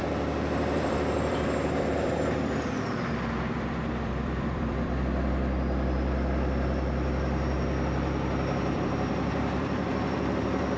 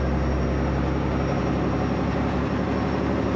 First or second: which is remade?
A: first